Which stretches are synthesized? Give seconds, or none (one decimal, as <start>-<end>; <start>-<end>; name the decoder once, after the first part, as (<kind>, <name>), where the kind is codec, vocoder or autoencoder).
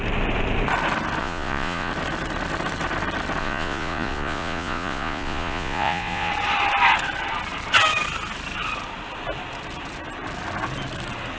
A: 1.2-1.9 (vocoder, Vocos); 3.4-6.3